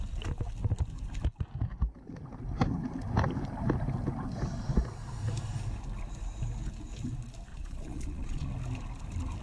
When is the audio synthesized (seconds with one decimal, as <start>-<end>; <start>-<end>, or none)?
7.5-8.5

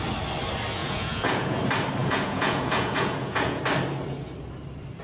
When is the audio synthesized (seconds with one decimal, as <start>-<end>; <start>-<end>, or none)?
0.8-1.6; 2.0-3.6

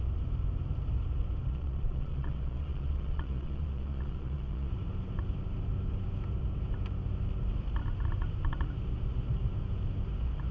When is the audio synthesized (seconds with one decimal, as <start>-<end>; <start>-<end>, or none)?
1.5-4.7

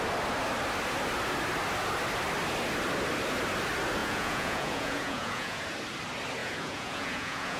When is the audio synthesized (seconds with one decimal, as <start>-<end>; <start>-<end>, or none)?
4.0-5.6; 6.4-7.6